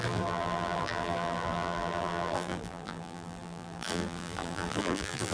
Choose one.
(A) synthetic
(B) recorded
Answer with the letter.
A